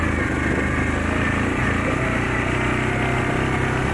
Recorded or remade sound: recorded